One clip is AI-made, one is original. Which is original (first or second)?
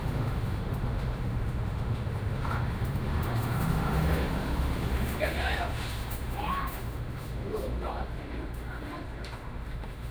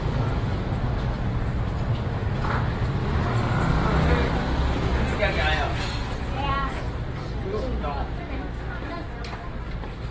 second